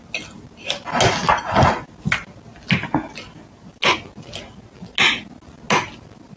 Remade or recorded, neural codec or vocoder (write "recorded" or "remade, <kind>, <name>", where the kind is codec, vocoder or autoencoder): recorded